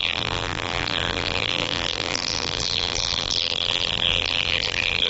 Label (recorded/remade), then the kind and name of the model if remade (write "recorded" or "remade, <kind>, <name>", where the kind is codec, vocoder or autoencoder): remade, vocoder, BigVGAN v2